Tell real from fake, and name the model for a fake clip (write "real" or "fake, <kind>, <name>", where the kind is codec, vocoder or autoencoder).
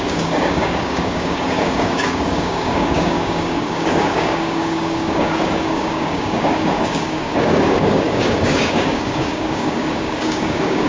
fake, codec, DAC